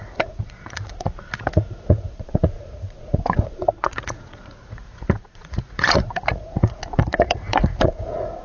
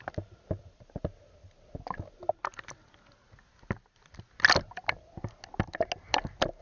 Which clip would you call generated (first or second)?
first